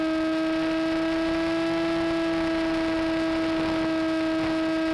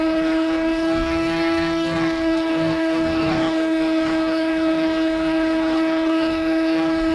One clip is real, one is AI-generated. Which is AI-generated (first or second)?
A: second